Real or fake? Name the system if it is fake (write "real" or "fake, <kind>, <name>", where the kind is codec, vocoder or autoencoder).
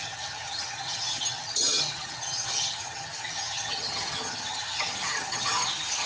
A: fake, vocoder, HiFi-GAN